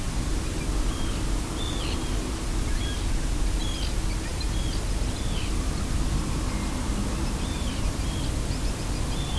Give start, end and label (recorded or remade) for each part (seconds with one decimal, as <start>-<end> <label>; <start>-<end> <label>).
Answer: 0.0-2.5 recorded; 2.5-3.1 remade; 3.1-6.8 recorded; 6.8-7.7 remade; 7.7-9.4 recorded